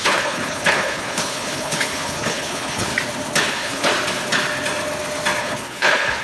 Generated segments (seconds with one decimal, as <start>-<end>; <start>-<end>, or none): 0.0-2.9; 3.5-3.9; 5.4-6.2